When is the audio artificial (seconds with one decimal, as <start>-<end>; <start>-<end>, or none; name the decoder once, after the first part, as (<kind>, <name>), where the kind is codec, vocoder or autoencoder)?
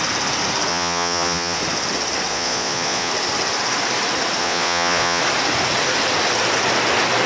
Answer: 0.7-1.6 (vocoder, Vocos); 2.3-3.1; 4.4-5.2